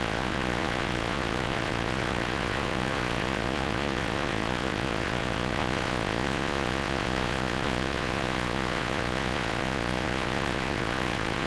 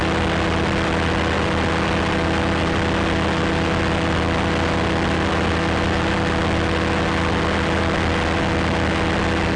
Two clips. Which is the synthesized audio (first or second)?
first